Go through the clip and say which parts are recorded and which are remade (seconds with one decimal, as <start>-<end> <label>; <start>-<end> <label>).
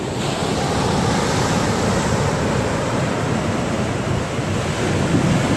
0.0-5.6 recorded